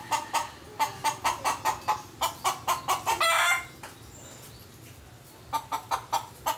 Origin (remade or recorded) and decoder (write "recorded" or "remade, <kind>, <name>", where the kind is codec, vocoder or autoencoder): recorded